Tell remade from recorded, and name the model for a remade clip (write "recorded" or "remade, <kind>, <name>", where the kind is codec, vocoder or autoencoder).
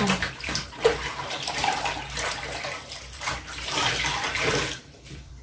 remade, vocoder, BigVGAN v2